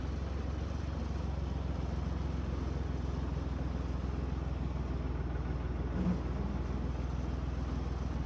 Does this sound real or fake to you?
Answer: real